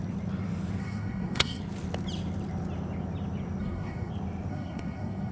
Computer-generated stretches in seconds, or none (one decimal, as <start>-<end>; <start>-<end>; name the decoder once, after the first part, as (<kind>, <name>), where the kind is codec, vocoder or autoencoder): 0.8-1.6 (codec, SNAC); 3.6-4.1; 4.5-5.3